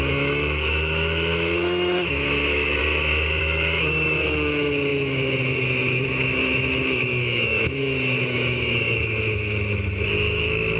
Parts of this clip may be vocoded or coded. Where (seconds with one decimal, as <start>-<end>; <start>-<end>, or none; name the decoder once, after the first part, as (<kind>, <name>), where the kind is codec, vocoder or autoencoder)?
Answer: 0.0-2.8 (autoencoder, DAC-VAE); 3.4-10.8